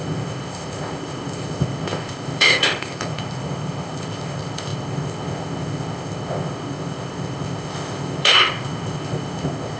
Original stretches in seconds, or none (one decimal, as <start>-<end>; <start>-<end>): none